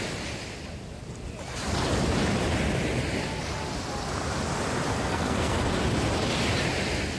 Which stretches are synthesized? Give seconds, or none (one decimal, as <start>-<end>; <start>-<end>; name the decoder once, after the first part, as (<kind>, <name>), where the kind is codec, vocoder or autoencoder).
4.9-5.7 (codec, SNAC)